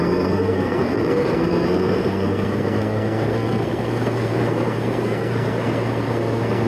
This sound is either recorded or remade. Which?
remade